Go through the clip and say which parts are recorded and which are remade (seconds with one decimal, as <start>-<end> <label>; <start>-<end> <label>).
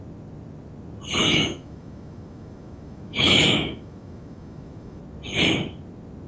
0.0-1.2 recorded; 1.2-5.0 remade; 5.0-6.3 recorded